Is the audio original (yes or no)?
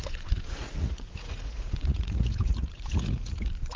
no